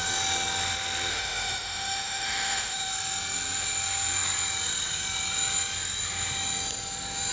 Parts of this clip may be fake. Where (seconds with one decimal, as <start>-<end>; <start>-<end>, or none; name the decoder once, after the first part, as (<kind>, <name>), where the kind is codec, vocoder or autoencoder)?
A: 1.1-2.9 (autoencoder, DAC-VAE)